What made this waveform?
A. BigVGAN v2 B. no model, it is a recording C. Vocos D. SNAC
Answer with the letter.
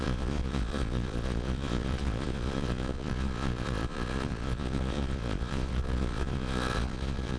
C